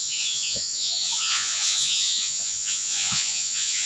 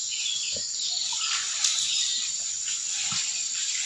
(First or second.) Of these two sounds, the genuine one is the second